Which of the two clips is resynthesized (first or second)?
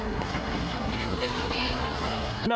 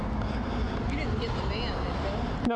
first